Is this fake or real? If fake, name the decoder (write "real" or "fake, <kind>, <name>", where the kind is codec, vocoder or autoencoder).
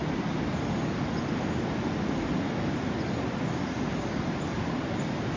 real